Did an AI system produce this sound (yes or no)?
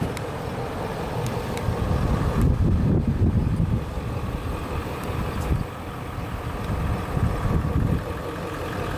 no